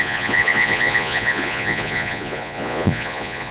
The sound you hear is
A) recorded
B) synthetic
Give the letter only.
B